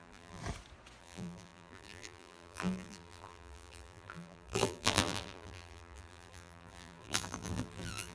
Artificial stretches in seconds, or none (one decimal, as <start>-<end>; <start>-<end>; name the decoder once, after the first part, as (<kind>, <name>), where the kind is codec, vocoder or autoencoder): 0.0-0.4 (vocoder, BigVGAN v2); 1.0-8.1